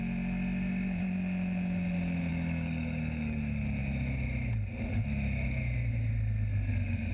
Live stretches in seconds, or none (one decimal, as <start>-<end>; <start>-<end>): 0.0-2.3; 3.4-7.1